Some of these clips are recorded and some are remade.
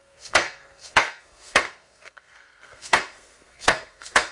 remade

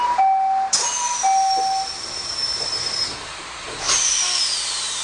recorded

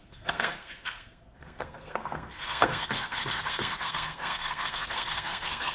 remade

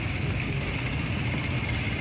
recorded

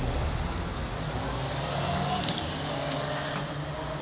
recorded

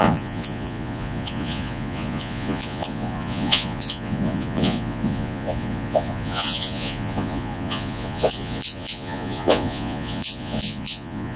remade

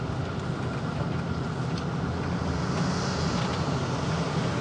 recorded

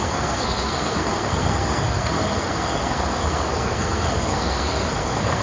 remade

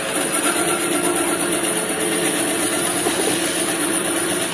recorded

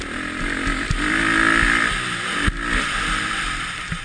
recorded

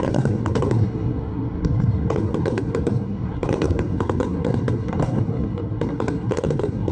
remade